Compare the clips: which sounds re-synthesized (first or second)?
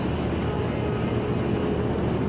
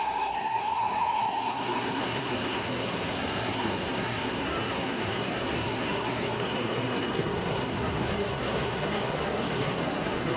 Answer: second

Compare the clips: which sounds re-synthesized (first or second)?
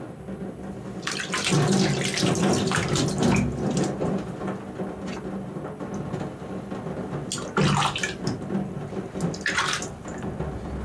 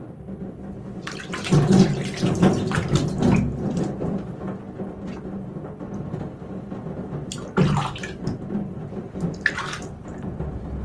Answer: second